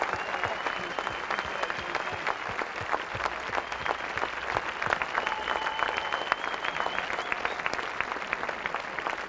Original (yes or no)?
yes